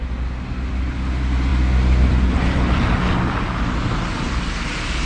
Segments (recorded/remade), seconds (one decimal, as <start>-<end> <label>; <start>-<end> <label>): 0.0-5.0 recorded